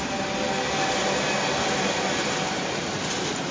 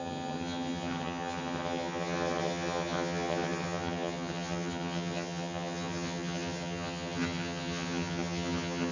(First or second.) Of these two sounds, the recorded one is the first